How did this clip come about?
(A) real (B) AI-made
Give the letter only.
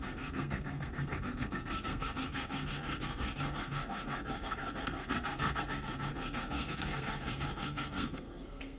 B